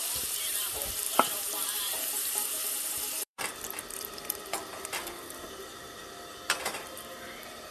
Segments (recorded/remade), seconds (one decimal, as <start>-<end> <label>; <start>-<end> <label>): 0.0-3.5 remade; 3.5-6.6 recorded; 6.6-7.7 remade